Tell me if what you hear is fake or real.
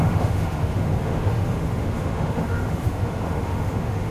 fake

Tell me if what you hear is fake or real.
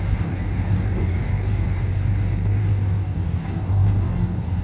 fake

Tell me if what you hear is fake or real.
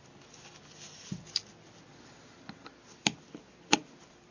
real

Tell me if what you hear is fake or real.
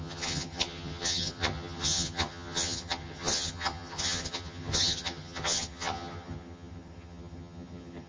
fake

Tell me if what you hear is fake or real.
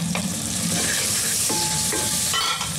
fake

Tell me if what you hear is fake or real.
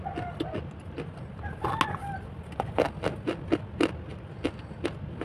real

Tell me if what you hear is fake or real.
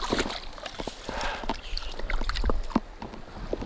real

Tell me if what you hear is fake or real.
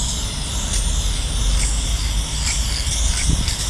real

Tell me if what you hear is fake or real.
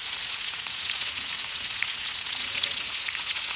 fake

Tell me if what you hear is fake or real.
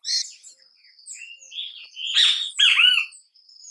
real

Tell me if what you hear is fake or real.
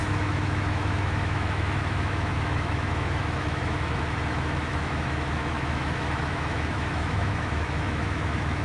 fake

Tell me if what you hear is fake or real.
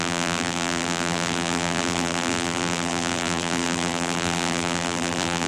fake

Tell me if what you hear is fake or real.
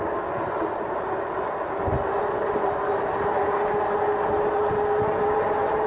real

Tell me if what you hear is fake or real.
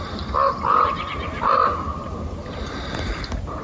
fake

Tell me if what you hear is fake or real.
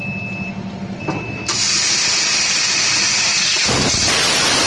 real